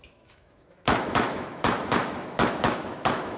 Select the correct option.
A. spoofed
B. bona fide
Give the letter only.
A